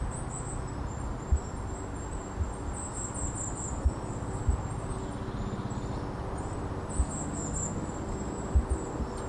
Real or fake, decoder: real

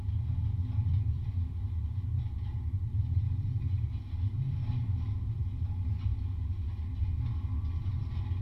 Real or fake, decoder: real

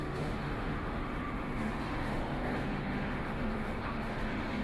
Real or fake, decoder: fake, autoencoder, DAC-VAE